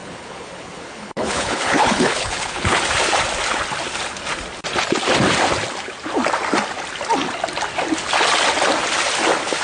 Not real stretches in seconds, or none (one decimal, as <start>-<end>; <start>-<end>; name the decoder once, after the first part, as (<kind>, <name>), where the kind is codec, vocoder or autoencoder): 0.0-2.8 (codec, HILCodec)